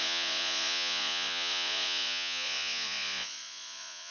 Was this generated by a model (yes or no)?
yes